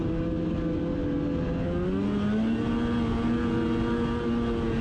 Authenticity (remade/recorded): recorded